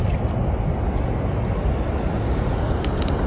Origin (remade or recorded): recorded